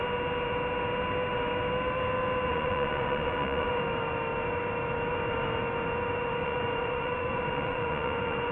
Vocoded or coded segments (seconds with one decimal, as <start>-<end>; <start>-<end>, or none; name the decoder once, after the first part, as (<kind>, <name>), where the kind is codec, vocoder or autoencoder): 2.5-3.8 (vocoder, Vocos); 6.4-8.5